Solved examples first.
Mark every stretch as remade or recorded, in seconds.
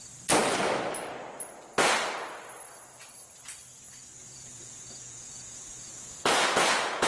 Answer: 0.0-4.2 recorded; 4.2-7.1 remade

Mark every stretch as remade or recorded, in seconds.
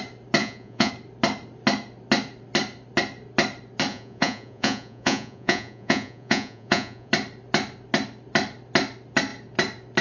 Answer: 0.0-0.4 recorded; 0.4-0.9 remade; 0.9-3.9 recorded; 3.9-7.1 remade; 7.1-10.0 recorded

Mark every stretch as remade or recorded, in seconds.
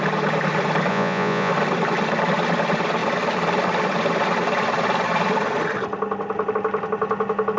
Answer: 0.0-0.9 recorded; 0.9-1.5 remade; 1.5-7.6 recorded